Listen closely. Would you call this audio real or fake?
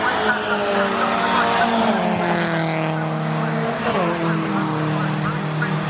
real